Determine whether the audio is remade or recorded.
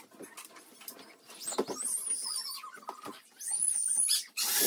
recorded